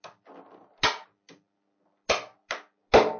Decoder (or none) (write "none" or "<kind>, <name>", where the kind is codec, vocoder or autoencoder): none